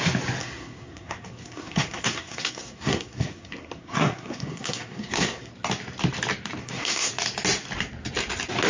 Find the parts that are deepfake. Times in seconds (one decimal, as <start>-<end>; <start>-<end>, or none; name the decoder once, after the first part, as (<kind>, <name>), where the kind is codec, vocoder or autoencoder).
0.4-5.5 (codec, SNAC); 6.6-7.1